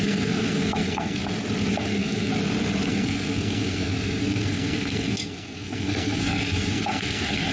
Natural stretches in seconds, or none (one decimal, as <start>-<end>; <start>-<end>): 1.2-1.7; 2.3-2.9